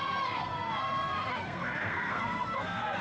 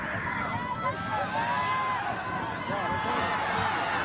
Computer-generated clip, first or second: first